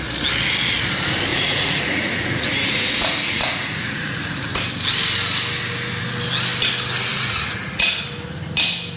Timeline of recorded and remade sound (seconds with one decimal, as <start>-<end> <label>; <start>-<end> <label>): 0.0-1.3 recorded; 1.3-4.5 remade; 4.5-7.1 recorded; 7.1-8.0 remade; 8.0-9.0 recorded